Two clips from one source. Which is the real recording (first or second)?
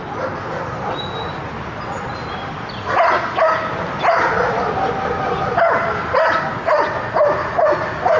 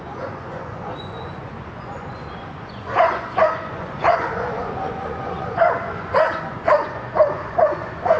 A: first